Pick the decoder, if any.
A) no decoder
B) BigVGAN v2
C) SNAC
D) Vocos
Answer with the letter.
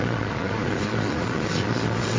D